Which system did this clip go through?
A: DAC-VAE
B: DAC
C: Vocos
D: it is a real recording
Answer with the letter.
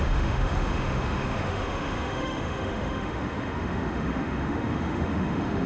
A